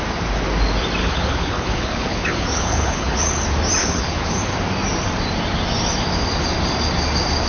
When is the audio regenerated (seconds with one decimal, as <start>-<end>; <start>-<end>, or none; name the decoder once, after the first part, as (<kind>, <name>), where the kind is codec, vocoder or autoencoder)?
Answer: 1.0-3.4 (codec, HILCodec); 3.8-4.4